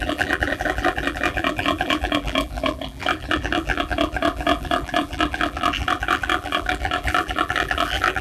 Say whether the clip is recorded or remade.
remade